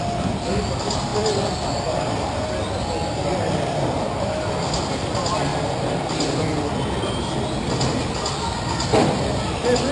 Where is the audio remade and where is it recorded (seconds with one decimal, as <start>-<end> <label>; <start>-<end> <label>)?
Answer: 0.0-9.9 recorded